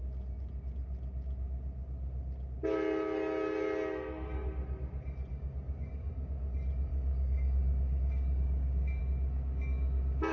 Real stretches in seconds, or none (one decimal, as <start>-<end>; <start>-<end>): 0.0-5.3; 6.1-6.9; 9.0-10.3